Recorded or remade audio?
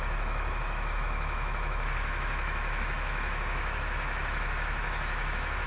remade